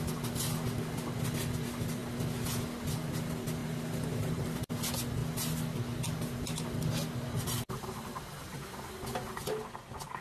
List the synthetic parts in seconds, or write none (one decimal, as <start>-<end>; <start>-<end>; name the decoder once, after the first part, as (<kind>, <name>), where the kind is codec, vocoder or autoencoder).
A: 3.6-4.6 (vocoder, BigVGAN v2)